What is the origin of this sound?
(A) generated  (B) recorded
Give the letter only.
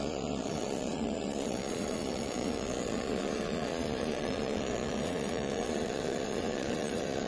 A